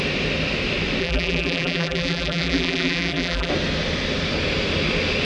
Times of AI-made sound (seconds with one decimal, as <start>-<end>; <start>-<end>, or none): 1.0-3.5